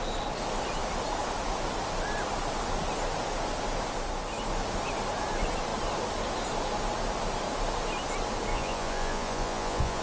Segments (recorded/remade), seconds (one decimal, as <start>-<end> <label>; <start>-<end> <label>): 0.0-8.5 recorded; 8.5-10.0 remade